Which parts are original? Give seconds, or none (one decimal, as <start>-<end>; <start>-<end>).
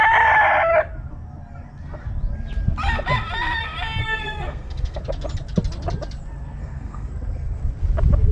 0.0-4.0; 5.0-6.6; 7.1-8.3